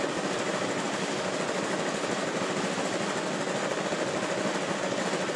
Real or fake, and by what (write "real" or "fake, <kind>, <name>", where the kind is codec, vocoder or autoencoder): real